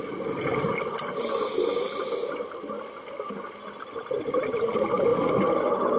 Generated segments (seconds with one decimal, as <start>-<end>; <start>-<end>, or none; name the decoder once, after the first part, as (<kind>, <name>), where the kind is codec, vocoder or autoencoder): none